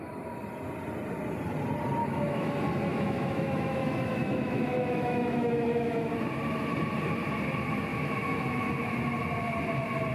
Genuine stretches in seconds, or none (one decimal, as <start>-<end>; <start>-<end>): 0.0-2.0; 2.5-2.9; 6.1-7.9; 8.7-10.1